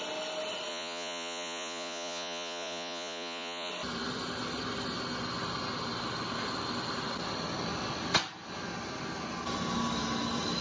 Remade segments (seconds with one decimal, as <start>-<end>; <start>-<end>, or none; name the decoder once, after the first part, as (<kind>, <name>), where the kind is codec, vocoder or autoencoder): 0.7-3.7 (vocoder, Vocos)